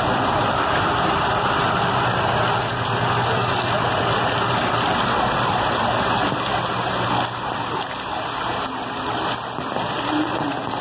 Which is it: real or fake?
real